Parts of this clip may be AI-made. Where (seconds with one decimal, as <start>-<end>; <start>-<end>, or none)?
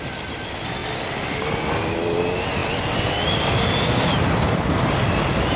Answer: none